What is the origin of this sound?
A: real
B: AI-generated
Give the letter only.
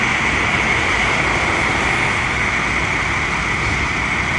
A